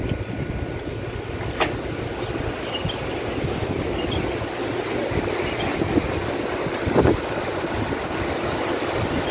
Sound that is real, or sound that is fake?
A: real